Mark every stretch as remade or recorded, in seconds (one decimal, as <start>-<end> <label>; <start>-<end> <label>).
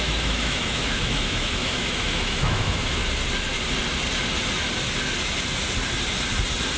0.0-3.0 remade; 3.0-6.8 recorded